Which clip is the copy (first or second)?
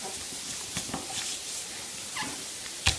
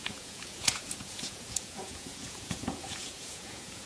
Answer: second